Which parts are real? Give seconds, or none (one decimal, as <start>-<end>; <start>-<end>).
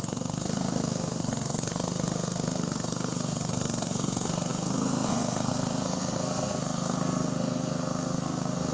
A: none